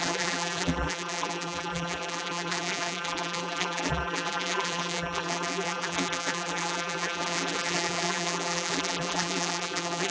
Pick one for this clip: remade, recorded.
remade